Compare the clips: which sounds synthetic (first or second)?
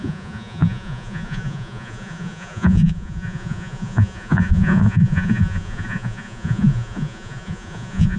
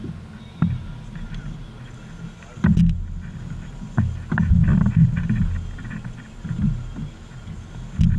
first